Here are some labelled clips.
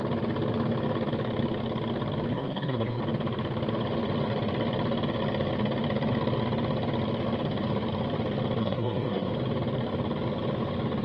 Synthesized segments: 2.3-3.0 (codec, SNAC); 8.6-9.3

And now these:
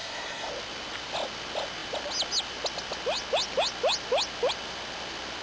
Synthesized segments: 0.0-0.5 (codec, SNAC)

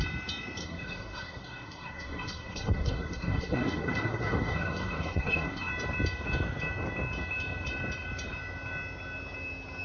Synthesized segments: 0.6-5.7 (codec, SNAC)

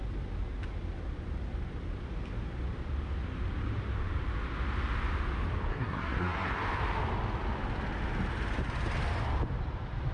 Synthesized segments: 5.7-6.5 (codec, SNAC)

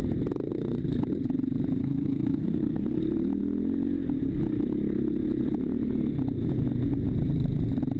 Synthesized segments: 1.8-3.0 (codec, SNAC)

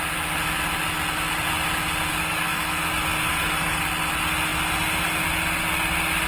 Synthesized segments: 2.1-2.8 (codec, SNAC); 3.3-3.8

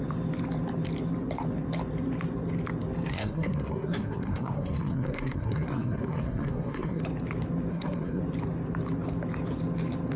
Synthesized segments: 3.1-7.0 (codec, SNAC); 7.7-8.2